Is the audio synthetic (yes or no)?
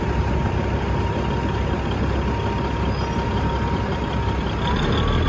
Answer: no